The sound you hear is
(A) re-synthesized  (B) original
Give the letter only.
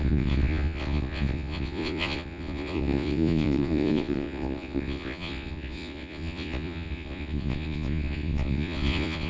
A